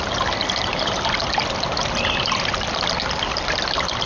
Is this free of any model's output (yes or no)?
yes